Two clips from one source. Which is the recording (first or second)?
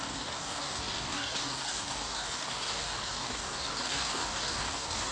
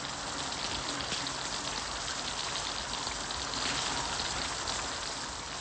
second